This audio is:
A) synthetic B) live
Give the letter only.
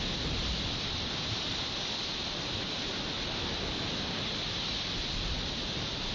B